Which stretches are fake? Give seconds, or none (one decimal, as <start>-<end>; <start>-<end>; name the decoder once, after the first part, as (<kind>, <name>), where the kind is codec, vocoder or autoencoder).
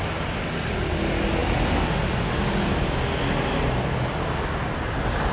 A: none